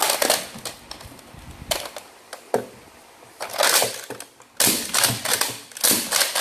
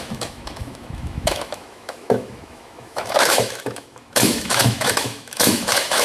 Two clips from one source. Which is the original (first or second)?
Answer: first